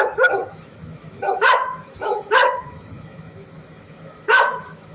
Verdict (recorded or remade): remade